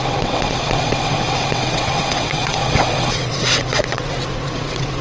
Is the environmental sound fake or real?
fake